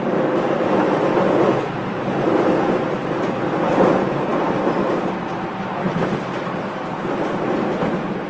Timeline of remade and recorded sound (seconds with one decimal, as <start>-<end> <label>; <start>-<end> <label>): 0.0-8.3 recorded